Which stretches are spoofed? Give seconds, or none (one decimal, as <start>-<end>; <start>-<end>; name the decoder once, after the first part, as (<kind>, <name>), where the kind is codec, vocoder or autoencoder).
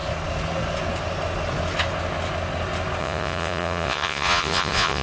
3.0-5.0 (vocoder, Vocos)